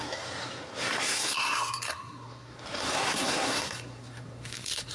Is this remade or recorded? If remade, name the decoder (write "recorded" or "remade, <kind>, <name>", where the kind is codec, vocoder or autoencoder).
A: remade, codec, SNAC